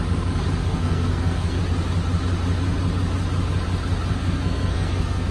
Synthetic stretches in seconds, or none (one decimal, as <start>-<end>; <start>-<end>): 0.6-1.6; 4.1-5.3

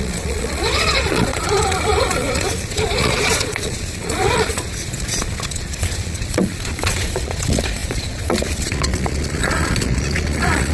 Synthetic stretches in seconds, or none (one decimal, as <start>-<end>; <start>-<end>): 0.0-10.7

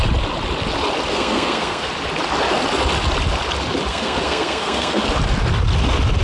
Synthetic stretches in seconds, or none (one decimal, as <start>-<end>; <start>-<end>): 1.1-1.9; 3.9-5.0

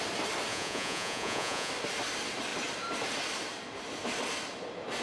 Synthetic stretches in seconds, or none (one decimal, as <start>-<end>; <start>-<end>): 0.5-1.7

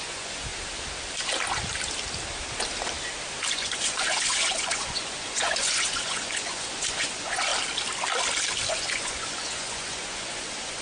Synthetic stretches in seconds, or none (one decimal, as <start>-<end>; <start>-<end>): 0.0-0.5; 3.5-7.5; 8.7-10.8